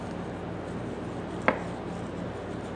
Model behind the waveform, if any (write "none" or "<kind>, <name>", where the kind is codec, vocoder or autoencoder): none